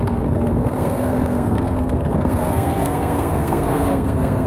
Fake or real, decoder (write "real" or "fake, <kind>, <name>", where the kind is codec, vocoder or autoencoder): fake, codec, SNAC